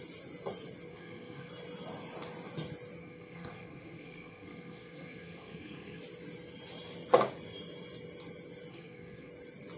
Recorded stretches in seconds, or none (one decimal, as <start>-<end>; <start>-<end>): 0.0-0.9; 1.5-3.0; 6.0-8.7; 9.3-9.8